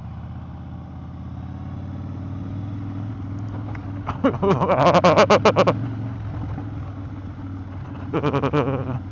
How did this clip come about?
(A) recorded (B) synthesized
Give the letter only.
A